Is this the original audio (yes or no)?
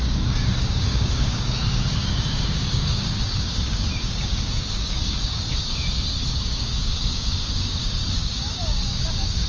no